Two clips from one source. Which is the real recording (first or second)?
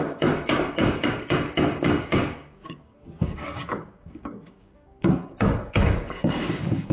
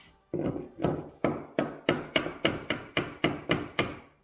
second